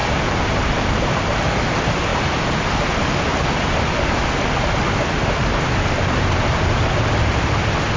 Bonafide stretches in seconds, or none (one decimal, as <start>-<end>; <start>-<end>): 1.2-8.0

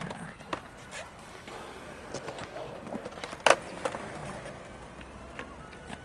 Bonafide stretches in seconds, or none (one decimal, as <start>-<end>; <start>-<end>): 0.0-0.5; 2.0-2.4; 3.1-6.0

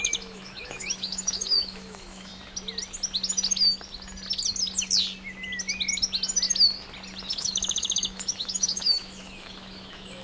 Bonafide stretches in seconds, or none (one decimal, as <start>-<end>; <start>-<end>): 2.3-7.3

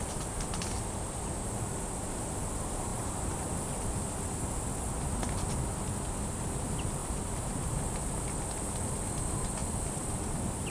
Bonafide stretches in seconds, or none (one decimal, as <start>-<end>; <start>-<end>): 0.0-2.9; 3.7-7.0; 7.8-9.6

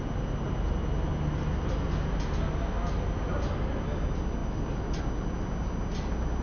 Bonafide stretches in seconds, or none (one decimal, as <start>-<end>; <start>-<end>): 0.0-4.4; 5.0-6.4

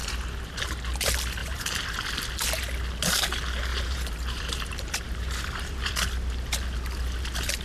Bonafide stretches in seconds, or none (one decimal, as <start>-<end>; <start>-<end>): 0.6-1.4; 2.0-3.7; 5.9-7.6

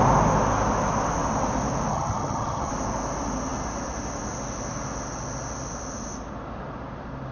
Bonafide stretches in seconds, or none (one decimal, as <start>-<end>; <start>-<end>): 0.0-1.9; 2.7-7.3